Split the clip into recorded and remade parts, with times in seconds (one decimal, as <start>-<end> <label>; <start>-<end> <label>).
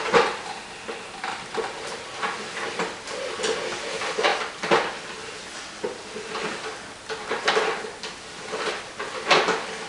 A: 0.0-9.9 recorded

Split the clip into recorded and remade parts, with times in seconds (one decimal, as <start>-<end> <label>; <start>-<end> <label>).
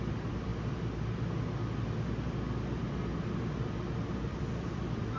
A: 0.0-0.5 remade; 0.5-3.6 recorded; 3.6-5.2 remade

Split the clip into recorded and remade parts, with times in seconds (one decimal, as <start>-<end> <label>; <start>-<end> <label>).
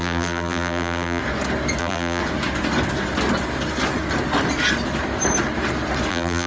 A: 0.0-1.2 remade; 1.2-1.8 recorded; 1.8-2.2 remade; 2.2-6.1 recorded; 6.1-6.5 remade